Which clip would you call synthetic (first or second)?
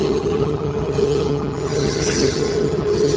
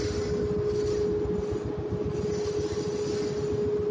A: first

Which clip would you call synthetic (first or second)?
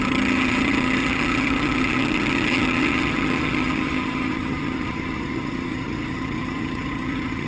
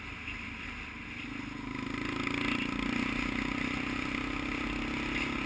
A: first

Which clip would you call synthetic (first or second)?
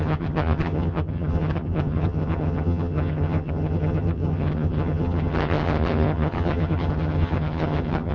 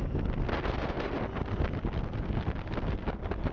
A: first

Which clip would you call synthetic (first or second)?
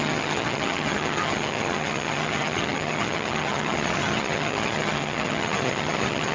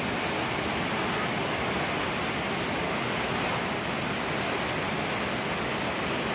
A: first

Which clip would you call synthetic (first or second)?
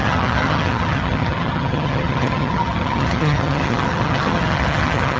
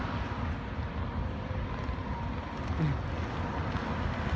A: first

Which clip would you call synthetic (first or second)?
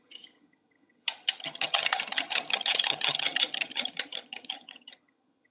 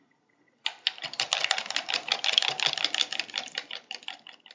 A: first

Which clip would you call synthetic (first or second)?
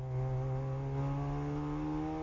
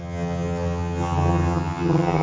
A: second